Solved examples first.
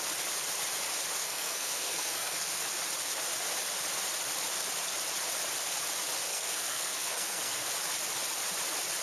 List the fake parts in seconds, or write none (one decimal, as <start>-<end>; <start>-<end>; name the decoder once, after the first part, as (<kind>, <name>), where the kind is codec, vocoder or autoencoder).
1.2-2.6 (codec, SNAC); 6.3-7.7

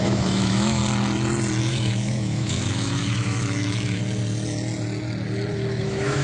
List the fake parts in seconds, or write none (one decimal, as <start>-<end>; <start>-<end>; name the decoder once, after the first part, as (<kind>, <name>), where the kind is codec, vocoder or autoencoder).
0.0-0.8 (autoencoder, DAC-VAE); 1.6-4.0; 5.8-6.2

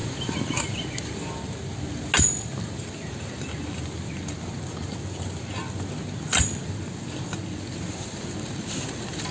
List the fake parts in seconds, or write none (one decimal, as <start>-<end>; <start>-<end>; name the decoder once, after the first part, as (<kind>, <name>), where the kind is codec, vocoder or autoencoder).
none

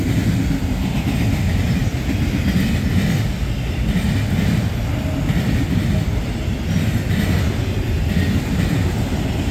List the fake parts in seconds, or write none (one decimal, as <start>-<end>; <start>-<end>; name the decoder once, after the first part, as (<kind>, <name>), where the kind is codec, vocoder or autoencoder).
none